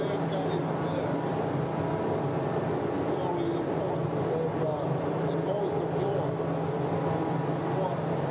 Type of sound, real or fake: real